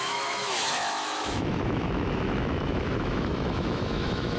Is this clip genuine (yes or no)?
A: no